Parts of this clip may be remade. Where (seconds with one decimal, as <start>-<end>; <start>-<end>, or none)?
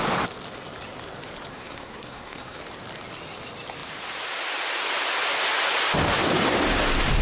1.5-2.6